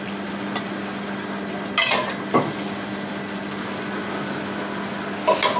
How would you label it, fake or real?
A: real